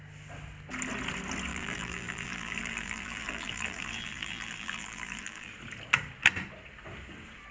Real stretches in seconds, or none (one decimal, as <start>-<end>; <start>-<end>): 0.0-1.5; 5.5-7.5